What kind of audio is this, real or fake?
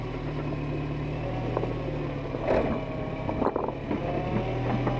real